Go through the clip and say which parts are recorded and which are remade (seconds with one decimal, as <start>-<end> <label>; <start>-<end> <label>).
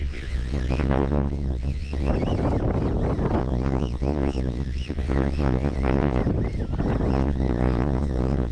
0.0-2.1 remade; 2.1-3.4 recorded; 3.4-6.2 remade; 6.2-7.1 recorded; 7.1-8.5 remade